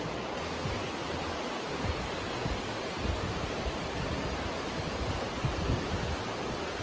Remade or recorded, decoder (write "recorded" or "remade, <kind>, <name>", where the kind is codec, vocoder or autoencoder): recorded